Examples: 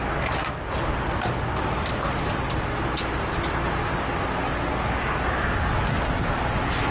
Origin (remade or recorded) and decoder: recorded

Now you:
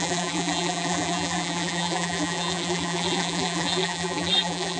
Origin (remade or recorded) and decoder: remade, vocoder, BigVGAN v2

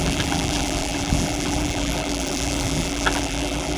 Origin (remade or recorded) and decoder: remade, vocoder, BigVGAN v2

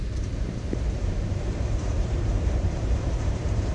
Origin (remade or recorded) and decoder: remade, vocoder, BigVGAN v2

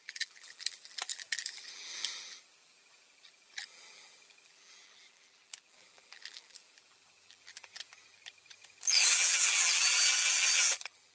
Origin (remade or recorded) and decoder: remade, vocoder, BigVGAN v2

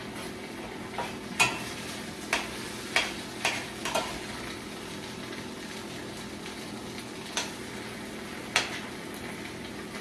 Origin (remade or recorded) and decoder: recorded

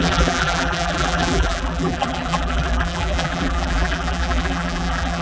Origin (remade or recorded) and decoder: remade, vocoder, BigVGAN v2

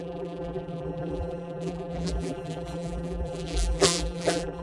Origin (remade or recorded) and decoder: remade, vocoder, BigVGAN v2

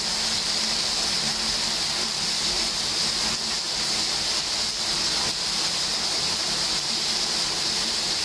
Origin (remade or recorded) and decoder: recorded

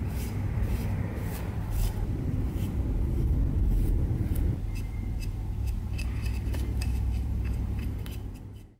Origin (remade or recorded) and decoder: remade, vocoder, BigVGAN v2